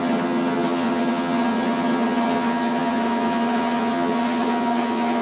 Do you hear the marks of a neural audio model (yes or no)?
yes